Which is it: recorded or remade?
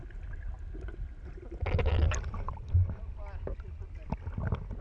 recorded